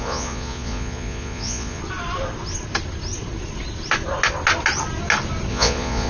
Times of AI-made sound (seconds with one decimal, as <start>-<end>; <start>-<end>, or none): 0.0-1.8; 5.5-6.1